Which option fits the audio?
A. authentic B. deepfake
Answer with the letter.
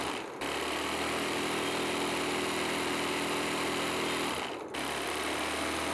A